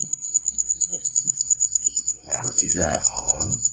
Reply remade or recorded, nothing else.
remade